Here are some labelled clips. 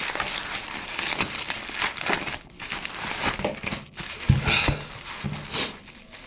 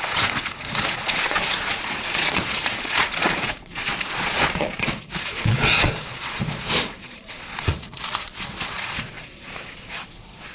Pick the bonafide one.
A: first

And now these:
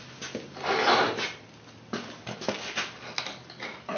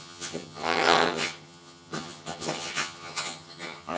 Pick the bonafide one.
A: first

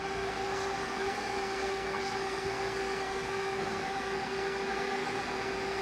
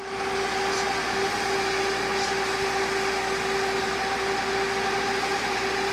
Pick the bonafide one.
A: second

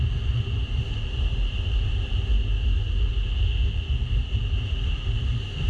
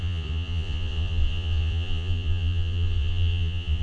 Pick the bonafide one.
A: first